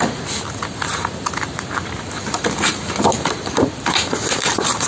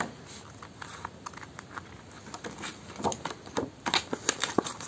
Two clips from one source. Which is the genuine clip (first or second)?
second